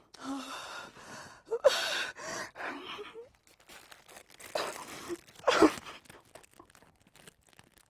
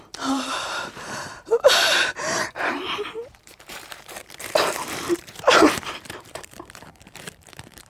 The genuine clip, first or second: first